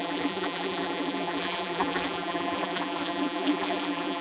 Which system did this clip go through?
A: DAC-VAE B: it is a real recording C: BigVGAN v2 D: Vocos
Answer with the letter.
C